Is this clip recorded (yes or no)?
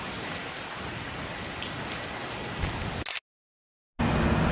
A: yes